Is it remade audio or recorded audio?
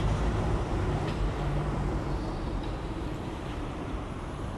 remade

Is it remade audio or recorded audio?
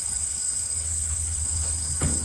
remade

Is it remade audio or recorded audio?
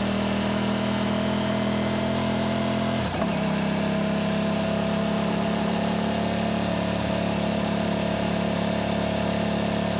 recorded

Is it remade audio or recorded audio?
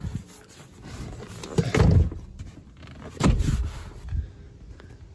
recorded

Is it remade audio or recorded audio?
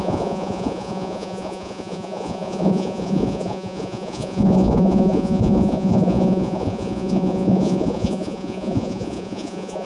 remade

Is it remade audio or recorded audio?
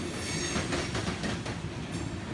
recorded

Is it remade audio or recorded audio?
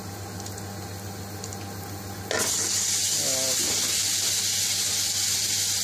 recorded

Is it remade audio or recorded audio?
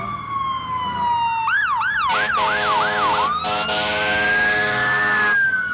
recorded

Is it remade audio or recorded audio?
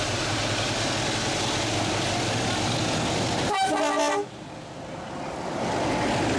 recorded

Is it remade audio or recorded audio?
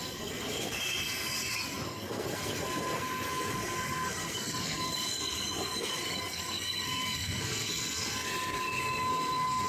remade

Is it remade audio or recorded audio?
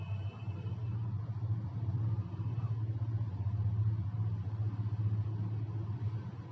recorded